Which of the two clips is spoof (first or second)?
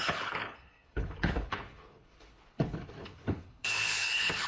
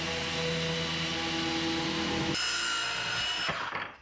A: first